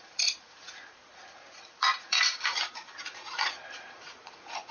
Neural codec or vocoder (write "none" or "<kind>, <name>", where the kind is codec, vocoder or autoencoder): vocoder, Vocos